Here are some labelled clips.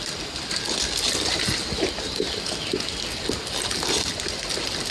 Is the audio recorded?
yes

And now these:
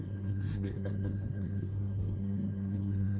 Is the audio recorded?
no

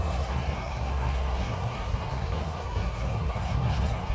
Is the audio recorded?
no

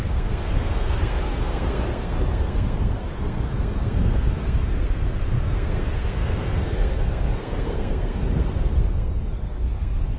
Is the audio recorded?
no